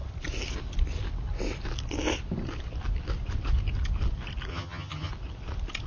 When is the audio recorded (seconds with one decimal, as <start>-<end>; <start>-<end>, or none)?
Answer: 0.0-4.5; 5.1-5.9